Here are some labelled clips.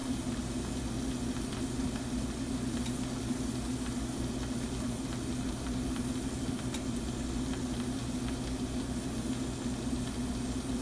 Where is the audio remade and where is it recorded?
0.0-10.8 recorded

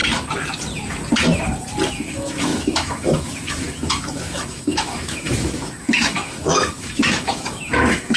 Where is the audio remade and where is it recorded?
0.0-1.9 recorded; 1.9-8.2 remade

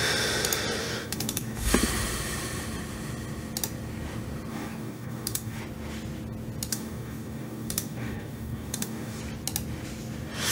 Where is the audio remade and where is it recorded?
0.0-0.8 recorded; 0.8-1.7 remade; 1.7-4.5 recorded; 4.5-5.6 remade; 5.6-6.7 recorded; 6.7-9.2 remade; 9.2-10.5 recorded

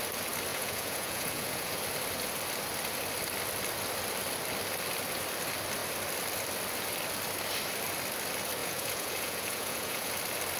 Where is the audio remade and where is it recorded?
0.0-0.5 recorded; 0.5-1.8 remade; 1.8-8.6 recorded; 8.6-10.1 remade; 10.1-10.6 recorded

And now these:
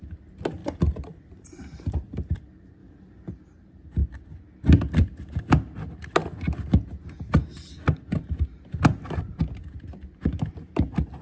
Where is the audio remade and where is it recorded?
0.0-0.6 recorded; 0.6-2.4 remade; 2.4-2.8 recorded; 2.8-3.3 remade; 3.3-11.2 recorded

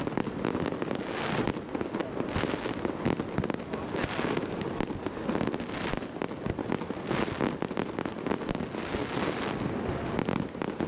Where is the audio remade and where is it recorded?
0.0-10.9 recorded

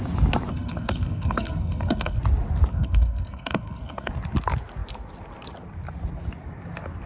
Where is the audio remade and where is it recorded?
0.0-0.5 recorded; 0.5-2.2 remade; 2.2-2.7 recorded; 2.7-4.1 remade; 4.1-7.1 recorded